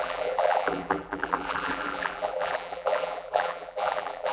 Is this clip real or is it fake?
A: fake